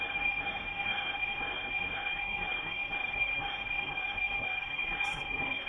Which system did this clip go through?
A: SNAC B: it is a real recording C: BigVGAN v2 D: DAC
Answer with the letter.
A